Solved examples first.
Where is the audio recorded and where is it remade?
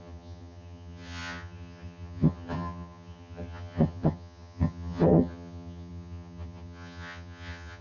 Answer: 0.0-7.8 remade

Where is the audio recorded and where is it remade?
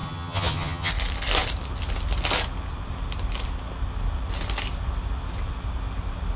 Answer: 0.0-0.9 remade; 0.9-6.4 recorded